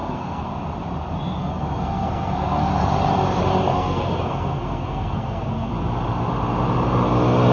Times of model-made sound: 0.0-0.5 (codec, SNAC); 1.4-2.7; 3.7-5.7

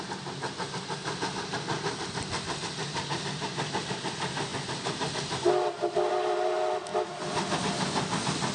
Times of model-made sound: none